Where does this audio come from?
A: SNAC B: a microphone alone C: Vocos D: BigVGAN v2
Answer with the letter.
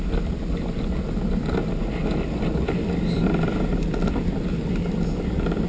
B